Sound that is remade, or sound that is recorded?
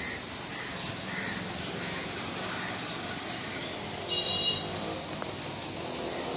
recorded